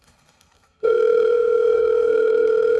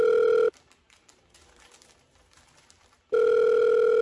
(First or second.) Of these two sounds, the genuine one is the second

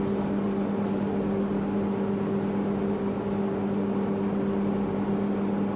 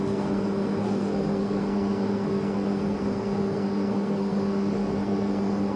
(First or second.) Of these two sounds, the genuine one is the first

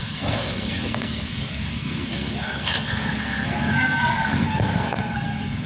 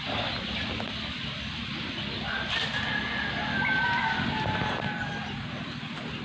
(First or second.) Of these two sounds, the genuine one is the second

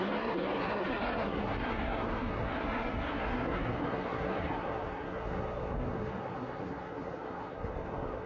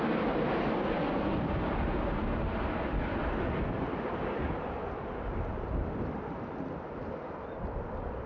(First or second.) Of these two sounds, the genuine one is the second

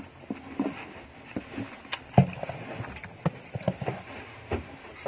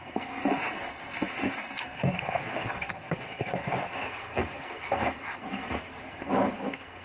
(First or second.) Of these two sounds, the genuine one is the first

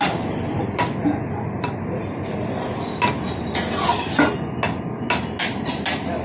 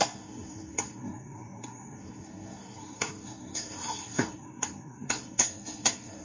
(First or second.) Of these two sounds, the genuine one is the first